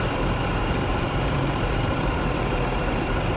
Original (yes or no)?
no